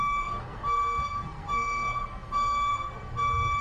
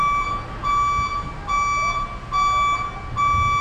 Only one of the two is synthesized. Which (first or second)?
first